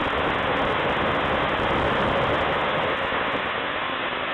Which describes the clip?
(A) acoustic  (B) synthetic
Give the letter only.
A